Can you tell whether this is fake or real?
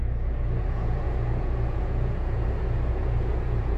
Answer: fake